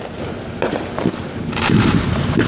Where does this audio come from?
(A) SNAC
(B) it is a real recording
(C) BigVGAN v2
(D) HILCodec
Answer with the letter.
C